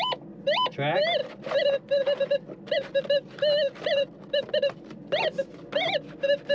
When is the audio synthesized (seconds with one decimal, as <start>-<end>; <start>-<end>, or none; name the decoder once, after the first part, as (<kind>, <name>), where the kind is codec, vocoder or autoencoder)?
none

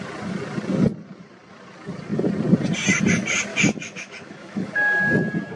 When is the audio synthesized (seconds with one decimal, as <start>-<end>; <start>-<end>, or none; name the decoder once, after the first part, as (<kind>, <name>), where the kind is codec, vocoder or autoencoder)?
3.5-4.7 (autoencoder, DAC-VAE)

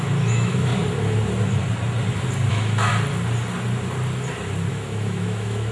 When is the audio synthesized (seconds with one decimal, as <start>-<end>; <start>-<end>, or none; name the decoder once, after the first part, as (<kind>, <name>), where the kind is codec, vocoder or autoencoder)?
0.0-0.7 (autoencoder, DAC-VAE); 2.5-2.9; 4.7-5.7

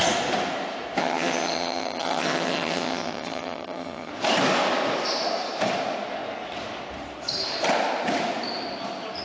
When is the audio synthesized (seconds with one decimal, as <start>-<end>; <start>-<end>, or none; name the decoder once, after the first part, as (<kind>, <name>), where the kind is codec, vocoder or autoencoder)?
1.0-4.1 (vocoder, HiFi-GAN)

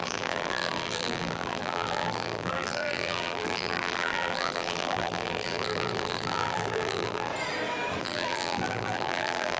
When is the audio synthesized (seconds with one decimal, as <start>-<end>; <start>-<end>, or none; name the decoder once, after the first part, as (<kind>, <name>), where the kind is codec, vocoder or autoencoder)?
0.0-7.3 (vocoder, BigVGAN v2); 8.0-9.6

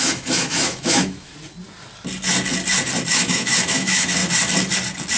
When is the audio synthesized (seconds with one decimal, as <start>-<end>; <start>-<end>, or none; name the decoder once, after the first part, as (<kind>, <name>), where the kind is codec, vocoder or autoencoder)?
0.0-1.3 (autoencoder, DAC-VAE); 3.1-4.2